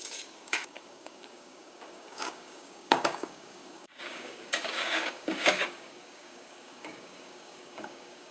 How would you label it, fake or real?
fake